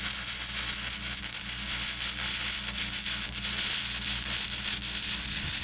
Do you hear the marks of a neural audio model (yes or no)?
no